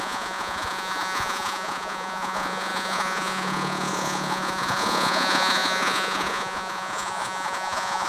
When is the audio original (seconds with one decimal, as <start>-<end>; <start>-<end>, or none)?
none